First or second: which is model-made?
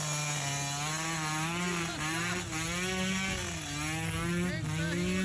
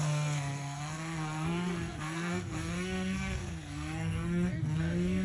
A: second